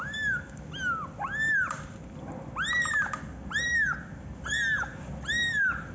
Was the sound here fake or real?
real